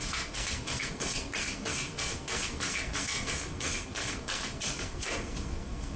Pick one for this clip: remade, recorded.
remade